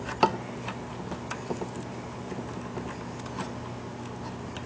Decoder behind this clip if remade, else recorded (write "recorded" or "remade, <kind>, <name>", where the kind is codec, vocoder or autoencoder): recorded